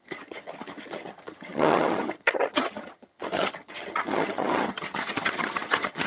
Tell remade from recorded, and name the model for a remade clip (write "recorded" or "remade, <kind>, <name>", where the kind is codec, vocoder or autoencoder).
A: remade, vocoder, HiFi-GAN